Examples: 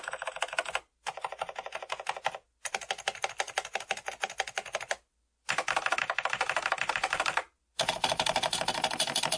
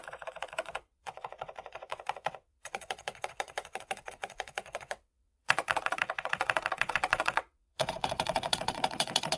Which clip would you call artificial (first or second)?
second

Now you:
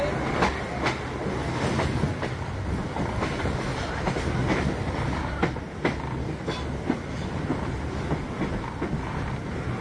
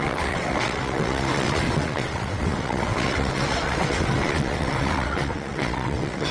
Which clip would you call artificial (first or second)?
second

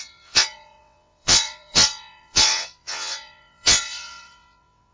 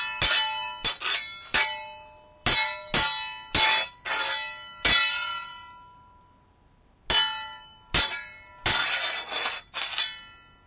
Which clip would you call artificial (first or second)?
first